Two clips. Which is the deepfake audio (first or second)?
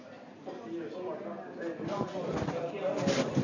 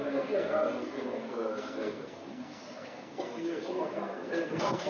second